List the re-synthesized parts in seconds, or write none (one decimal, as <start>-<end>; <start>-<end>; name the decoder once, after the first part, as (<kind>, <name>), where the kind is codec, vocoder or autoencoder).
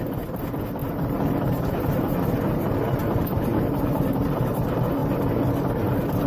0.8-2.2 (vocoder, BigVGAN v2); 3.0-4.4